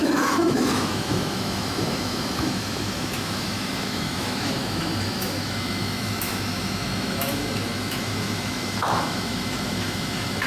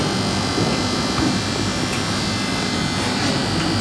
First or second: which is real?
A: second